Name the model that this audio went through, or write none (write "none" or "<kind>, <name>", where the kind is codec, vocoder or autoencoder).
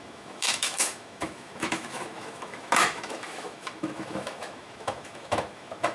autoencoder, DAC-VAE